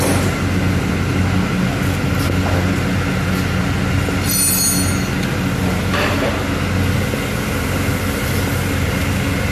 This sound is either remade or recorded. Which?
recorded